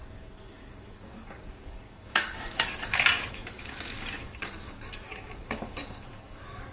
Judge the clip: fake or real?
fake